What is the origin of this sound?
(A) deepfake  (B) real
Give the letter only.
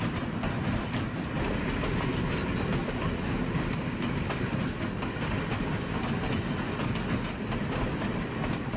B